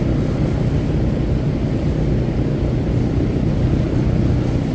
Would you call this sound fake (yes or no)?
no